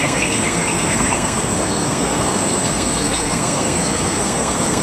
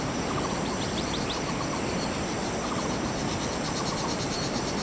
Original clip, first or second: second